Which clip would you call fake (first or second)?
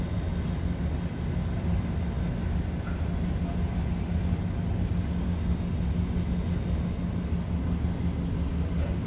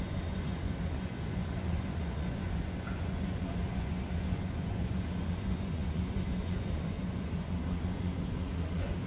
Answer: second